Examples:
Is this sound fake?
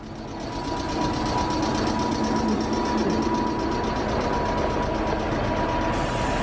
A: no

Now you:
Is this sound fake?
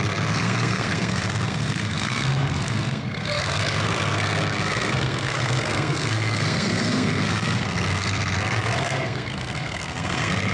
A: yes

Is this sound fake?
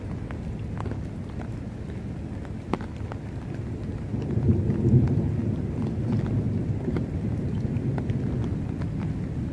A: no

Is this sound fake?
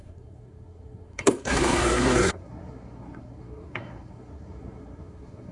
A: yes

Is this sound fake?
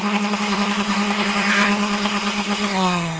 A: yes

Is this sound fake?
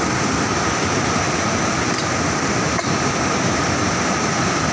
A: no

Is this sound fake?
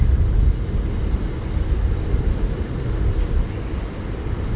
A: no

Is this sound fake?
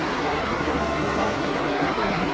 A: yes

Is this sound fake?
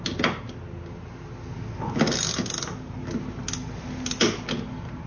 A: no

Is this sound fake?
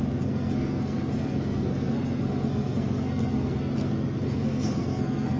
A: yes